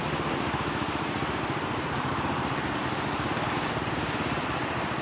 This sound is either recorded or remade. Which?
remade